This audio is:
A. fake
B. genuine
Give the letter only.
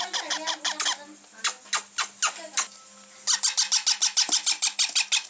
B